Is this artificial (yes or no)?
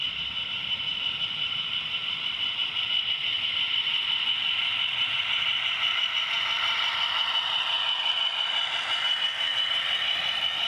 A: yes